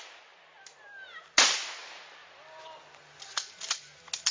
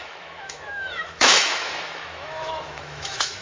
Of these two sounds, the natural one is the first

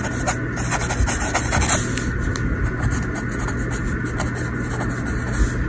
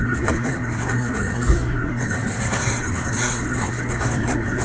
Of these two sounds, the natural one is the first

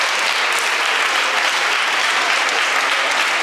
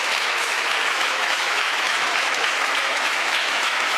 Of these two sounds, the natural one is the first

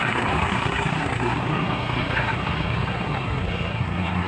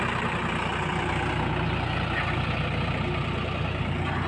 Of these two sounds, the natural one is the second